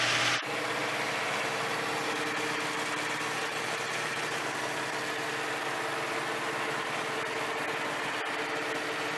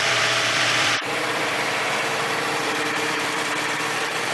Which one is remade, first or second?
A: second